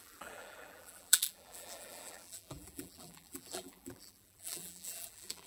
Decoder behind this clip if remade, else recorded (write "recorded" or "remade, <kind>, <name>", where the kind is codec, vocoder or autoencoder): remade, vocoder, BigVGAN v2